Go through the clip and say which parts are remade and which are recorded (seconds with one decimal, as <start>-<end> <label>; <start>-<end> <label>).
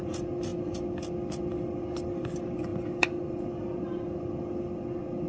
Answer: 0.0-5.3 recorded